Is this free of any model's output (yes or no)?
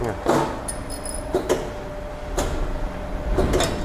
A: yes